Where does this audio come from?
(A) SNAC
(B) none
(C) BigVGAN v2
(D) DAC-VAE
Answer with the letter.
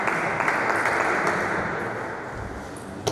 B